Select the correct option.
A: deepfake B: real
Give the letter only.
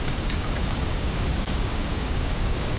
A